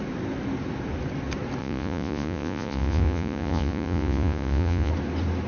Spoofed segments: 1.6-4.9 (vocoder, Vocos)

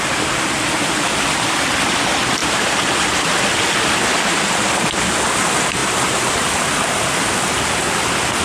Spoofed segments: 2.4-3.4 (vocoder, BigVGAN v2); 5.8-6.5

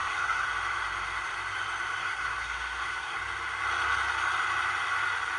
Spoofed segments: 0.0-0.5 (codec, SNAC); 2.0-3.2

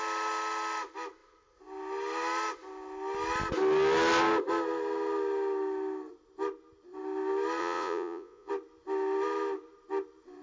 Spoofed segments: 7.6-8.5 (vocoder, Vocos)

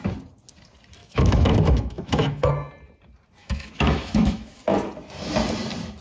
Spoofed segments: 1.0-2.5 (autoencoder, DAC-VAE); 3.4-4.6

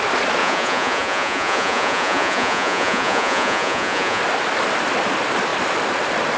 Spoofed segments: 0.4-4.2 (vocoder, Vocos)

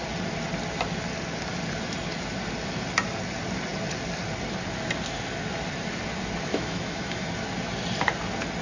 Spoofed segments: 6.5-7.2 (autoencoder, DAC-VAE)